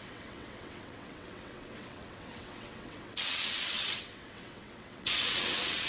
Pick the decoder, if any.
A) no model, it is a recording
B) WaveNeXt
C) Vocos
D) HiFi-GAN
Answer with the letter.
B